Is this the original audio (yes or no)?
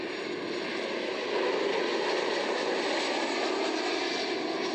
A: yes